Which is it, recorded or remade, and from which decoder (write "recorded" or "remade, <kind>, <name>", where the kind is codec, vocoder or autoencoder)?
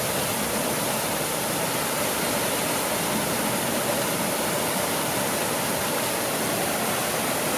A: remade, vocoder, BigVGAN v2